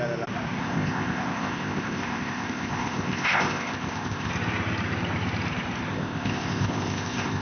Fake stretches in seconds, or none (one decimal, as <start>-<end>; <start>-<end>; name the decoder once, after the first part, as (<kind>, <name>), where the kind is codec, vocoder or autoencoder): 0.6-4.3 (codec, ZipCodec); 5.9-7.4